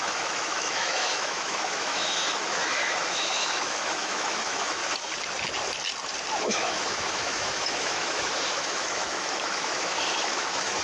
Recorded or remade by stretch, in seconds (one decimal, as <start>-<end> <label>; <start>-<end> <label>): 0.0-4.8 remade; 4.8-6.4 recorded; 6.4-10.8 remade